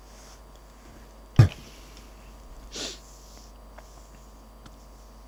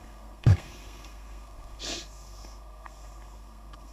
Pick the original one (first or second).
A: first